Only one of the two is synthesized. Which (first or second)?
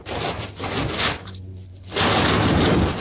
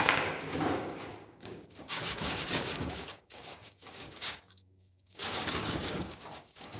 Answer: second